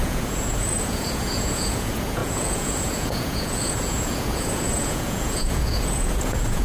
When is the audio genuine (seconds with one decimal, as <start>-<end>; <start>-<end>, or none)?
none